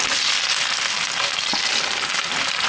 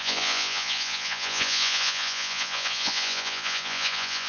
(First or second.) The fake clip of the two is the second